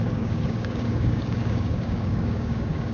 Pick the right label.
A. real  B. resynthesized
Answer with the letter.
B